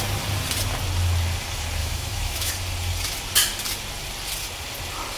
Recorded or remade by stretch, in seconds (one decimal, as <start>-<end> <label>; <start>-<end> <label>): 0.0-1.8 recorded; 1.8-2.5 remade; 2.5-5.2 recorded